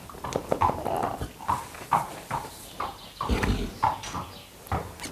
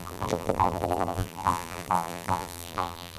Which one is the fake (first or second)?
second